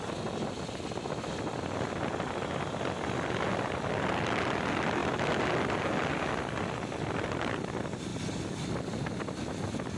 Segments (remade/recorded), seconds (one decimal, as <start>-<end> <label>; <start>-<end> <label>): 0.0-10.0 recorded